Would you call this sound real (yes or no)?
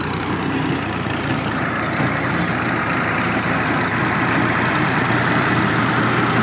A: no